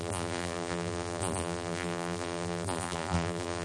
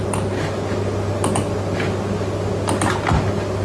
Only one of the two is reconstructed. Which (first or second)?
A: first